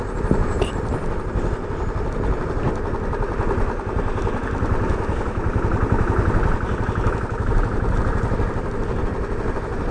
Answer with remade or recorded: recorded